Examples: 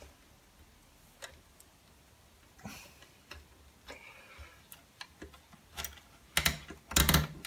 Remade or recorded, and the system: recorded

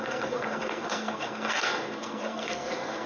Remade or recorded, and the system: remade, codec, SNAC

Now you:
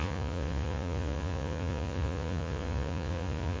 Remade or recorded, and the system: remade, vocoder, Vocos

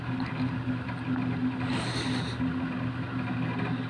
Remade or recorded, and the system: recorded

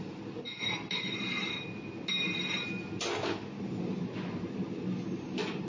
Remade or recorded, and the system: recorded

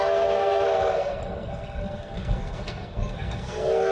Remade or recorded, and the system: remade, codec, SNAC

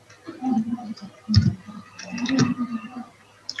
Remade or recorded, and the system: recorded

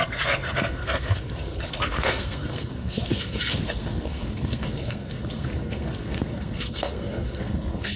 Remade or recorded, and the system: remade, codec, SNAC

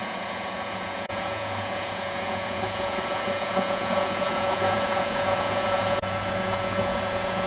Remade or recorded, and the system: remade, vocoder, Vocos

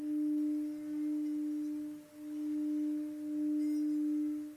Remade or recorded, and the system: recorded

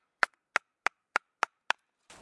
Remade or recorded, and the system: recorded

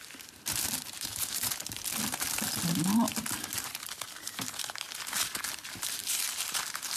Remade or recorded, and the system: recorded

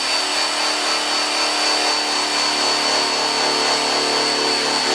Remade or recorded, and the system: recorded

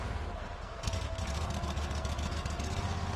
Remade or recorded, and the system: remade, codec, SNAC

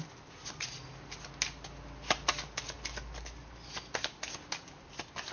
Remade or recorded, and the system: recorded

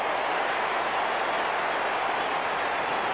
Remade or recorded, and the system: recorded